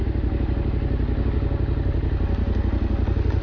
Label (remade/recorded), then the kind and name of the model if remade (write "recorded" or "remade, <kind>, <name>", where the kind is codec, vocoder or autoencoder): recorded